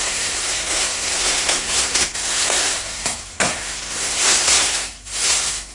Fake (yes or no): yes